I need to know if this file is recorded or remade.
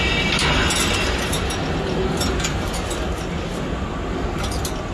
recorded